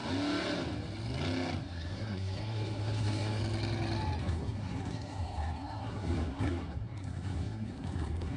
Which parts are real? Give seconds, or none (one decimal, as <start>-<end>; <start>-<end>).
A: 0.0-1.6; 3.4-4.2

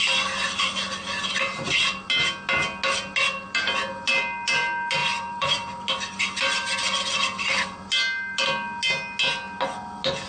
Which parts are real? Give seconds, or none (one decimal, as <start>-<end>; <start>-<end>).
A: 0.0-5.0; 5.8-10.3

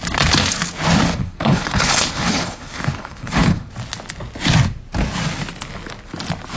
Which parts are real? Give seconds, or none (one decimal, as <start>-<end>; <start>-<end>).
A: 0.0-1.2; 3.7-6.6

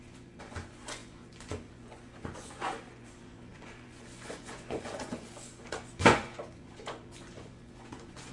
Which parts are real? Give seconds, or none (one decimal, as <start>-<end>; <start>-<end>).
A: none

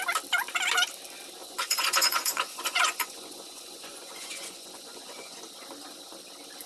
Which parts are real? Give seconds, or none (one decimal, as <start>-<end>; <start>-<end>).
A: 0.0-1.4; 5.4-6.7

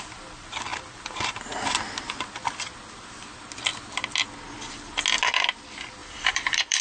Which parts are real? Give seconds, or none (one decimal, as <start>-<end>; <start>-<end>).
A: 0.0-6.0

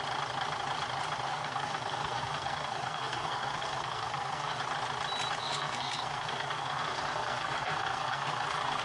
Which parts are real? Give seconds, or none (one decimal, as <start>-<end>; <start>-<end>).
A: 0.0-1.3; 4.6-5.4